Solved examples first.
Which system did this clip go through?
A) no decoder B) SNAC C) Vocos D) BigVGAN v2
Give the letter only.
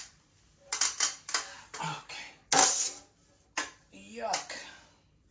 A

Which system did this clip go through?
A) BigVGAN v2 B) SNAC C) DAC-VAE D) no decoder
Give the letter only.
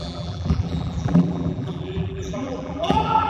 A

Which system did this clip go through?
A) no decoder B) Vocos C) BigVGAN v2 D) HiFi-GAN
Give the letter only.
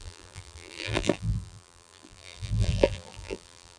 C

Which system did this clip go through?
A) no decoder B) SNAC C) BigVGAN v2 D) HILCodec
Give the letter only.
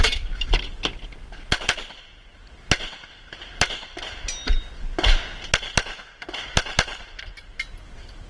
A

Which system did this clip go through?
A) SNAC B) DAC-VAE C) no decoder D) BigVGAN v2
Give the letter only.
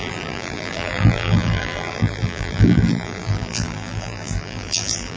D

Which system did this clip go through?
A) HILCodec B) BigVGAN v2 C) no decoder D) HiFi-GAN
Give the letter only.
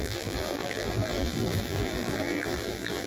B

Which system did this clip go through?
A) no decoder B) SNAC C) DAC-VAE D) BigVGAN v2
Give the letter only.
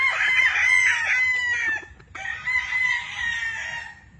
A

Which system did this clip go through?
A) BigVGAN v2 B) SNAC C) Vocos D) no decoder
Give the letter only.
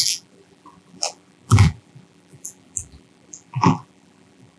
A